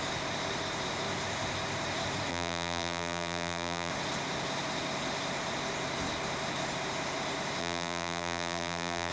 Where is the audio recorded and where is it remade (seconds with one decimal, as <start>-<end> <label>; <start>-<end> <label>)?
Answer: 0.0-2.3 recorded; 2.3-3.9 remade; 3.9-7.6 recorded; 7.6-9.1 remade